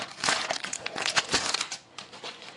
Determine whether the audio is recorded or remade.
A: remade